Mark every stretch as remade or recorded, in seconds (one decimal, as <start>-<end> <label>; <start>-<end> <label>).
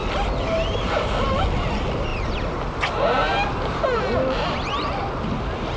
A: 0.0-5.8 recorded